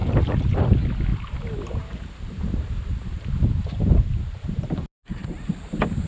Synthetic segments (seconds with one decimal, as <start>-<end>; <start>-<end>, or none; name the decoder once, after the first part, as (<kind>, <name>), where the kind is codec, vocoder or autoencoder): 0.0-0.6 (vocoder, BigVGAN v2); 1.1-4.8